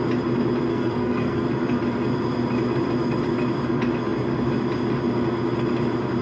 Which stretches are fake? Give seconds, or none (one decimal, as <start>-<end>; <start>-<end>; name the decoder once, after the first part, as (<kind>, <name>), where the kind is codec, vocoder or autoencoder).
0.7-1.4 (codec, SNAC)